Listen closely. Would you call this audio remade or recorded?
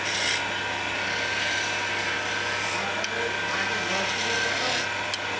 recorded